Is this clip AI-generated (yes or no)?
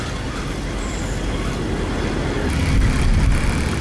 no